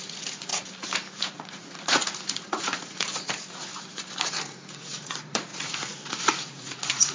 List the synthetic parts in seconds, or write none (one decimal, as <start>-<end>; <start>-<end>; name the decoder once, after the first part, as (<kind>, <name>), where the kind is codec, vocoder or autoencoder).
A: 0.0-0.5 (vocoder, Vocos); 1.1-3.7; 4.3-7.1